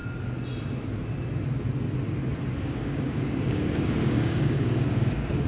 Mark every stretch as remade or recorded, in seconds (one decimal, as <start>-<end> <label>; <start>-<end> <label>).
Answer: 0.0-2.6 recorded; 2.6-5.5 remade